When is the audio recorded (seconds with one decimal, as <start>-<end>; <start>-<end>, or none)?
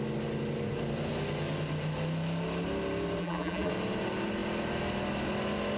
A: 0.0-3.2; 3.7-5.8